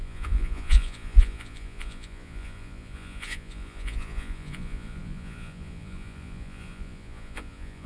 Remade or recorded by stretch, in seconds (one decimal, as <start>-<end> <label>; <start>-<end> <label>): 0.0-7.9 remade